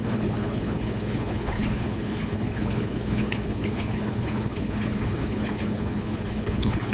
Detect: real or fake fake